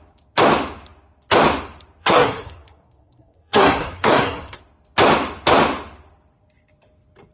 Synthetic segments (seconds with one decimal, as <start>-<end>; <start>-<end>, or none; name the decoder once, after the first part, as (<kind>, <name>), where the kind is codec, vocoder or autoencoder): 2.0-4.6 (codec, SNAC)

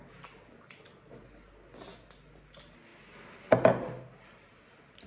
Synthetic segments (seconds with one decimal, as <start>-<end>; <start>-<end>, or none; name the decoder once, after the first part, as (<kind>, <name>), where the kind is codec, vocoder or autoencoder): none

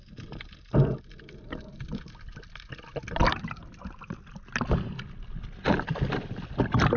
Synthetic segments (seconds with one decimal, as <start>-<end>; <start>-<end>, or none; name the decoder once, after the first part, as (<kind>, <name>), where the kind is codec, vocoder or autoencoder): none

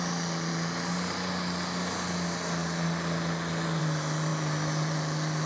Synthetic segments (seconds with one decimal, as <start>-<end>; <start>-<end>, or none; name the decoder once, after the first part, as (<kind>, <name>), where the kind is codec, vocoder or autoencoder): none

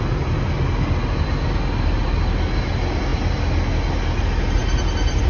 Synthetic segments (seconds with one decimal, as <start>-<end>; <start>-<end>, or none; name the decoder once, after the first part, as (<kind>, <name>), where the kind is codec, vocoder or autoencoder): none

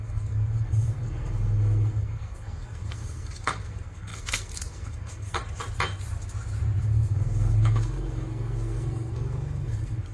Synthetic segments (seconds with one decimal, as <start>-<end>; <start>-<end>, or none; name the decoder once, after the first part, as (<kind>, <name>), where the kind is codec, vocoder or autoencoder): 0.0-5.4 (codec, SNAC); 6.8-10.1

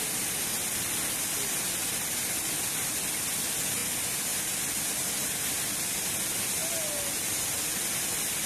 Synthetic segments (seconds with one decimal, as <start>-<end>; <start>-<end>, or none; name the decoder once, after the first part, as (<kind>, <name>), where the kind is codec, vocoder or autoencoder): none

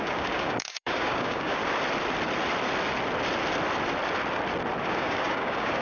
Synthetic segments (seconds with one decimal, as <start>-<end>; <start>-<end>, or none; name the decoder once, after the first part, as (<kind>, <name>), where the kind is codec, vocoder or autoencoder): 0.0-1.6 (codec, DAC); 4.8-5.8